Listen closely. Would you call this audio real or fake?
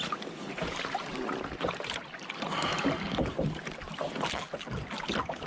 real